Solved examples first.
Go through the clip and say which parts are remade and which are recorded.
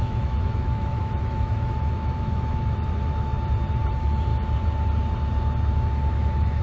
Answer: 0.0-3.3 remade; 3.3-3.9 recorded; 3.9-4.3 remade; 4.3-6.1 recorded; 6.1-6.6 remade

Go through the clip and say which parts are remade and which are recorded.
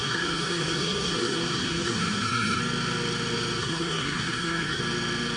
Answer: 0.0-2.6 remade; 2.6-3.6 recorded; 3.6-4.8 remade; 4.8-5.4 recorded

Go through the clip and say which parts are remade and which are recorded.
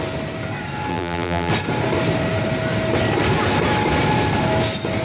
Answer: 0.0-0.9 recorded; 0.9-1.5 remade; 1.5-5.0 recorded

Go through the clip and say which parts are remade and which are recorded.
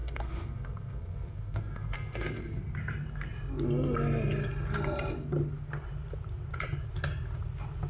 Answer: 0.0-2.6 remade; 2.6-7.9 recorded